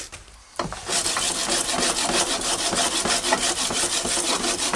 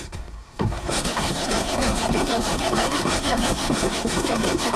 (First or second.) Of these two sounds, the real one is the first